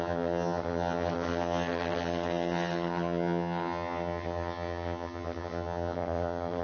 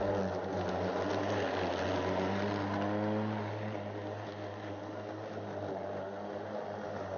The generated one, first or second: first